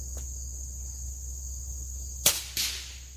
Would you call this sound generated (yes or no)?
no